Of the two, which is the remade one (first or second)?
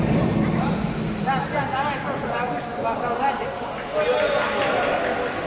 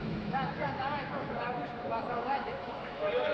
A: second